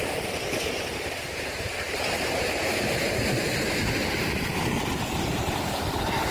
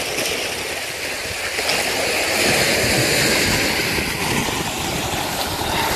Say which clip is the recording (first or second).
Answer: second